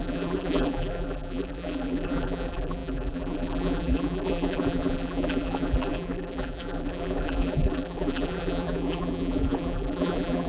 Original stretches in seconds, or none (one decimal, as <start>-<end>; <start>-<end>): none